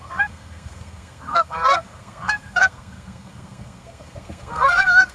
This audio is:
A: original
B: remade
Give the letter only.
B